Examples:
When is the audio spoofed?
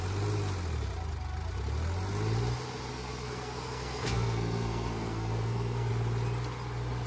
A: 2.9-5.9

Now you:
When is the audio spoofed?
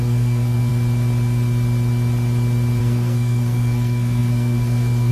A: 0.0-0.7; 2.8-5.1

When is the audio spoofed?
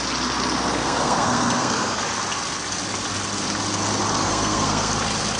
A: 0.8-2.0; 4.2-4.9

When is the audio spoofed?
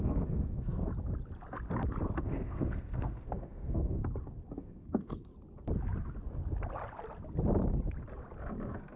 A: 0.0-0.9; 2.2-4.0; 4.6-5.3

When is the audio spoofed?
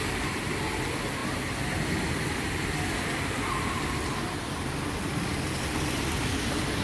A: none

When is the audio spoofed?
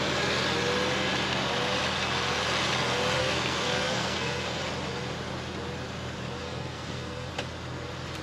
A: 3.2-4.6; 6.4-7.3